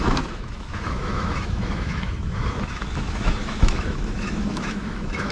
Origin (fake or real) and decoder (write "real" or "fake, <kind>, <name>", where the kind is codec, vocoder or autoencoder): fake, autoencoder, DAC-VAE